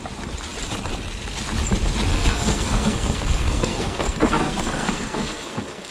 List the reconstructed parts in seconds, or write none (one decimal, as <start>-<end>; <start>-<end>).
2.1-5.9